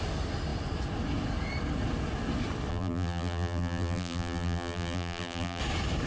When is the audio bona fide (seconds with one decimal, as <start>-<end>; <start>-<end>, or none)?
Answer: 0.0-2.7; 5.6-6.1